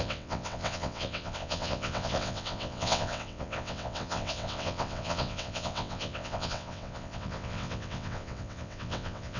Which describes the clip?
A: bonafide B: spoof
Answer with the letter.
B